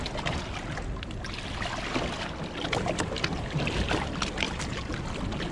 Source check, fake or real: real